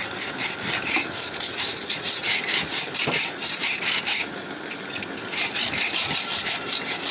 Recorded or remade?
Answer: remade